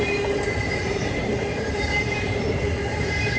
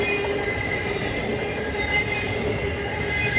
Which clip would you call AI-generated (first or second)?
first